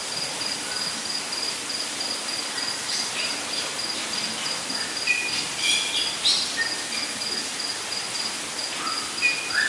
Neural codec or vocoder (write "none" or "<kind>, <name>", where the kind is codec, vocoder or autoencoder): none